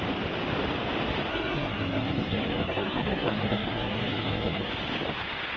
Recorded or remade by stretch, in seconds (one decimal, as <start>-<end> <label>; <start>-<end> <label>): 0.0-1.3 recorded; 1.3-4.7 remade; 4.7-5.6 recorded